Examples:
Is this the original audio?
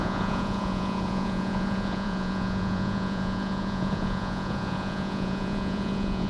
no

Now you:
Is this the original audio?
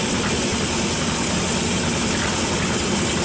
yes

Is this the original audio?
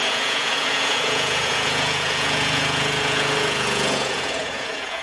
no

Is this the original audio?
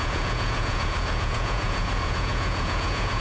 no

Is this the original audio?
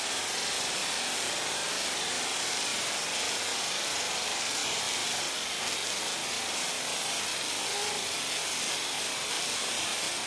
yes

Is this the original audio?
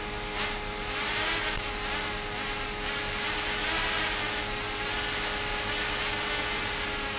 yes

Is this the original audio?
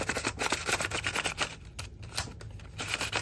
yes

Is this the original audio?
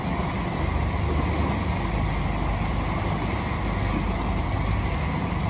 yes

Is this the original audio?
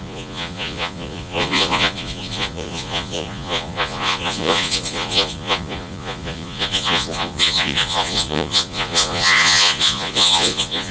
no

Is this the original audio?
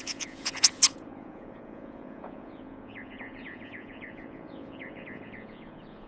no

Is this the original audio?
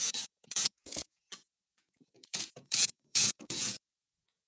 no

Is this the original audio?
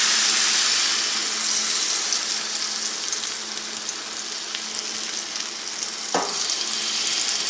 yes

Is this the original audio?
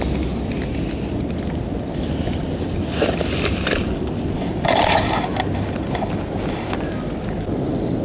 yes